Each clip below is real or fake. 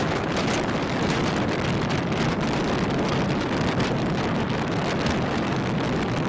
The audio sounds real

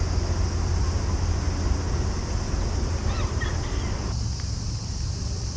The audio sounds real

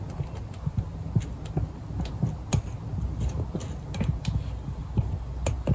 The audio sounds real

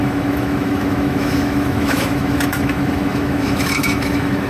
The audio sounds fake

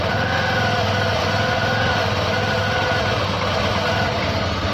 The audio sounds real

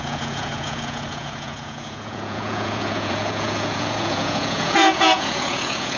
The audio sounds fake